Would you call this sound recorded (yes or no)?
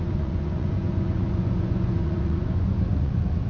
no